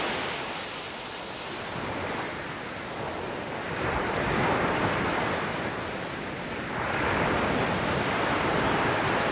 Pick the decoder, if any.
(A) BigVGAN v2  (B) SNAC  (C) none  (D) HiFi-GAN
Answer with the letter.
C